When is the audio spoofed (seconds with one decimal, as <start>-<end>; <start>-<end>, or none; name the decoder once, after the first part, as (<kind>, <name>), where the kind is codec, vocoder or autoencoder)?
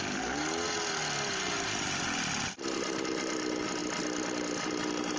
none